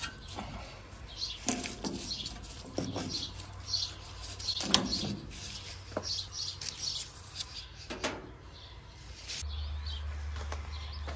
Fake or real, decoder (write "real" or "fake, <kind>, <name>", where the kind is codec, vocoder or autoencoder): real